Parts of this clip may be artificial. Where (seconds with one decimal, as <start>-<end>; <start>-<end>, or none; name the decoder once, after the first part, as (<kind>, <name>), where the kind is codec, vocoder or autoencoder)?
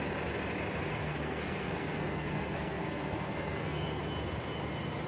0.9-4.0 (codec, SNAC)